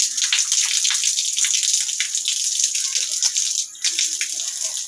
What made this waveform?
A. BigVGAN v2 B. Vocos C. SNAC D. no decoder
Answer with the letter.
D